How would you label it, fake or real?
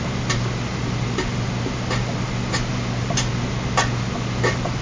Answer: real